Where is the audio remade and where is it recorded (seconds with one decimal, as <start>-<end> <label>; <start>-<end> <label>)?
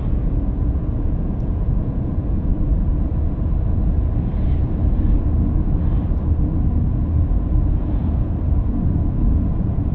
0.0-2.5 remade; 2.5-7.5 recorded; 7.5-9.9 remade